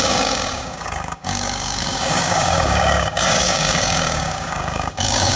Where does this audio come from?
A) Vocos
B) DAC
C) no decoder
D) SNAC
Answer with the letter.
B